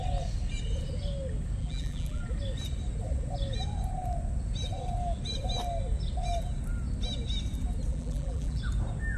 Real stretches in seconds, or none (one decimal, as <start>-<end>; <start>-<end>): 0.0-1.6; 2.2-7.9; 8.6-9.2